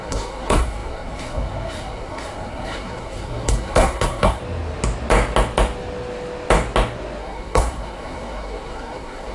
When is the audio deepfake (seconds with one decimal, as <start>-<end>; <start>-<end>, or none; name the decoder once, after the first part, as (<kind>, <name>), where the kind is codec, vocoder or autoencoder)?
0.0-4.4 (codec, SNAC); 7.2-9.3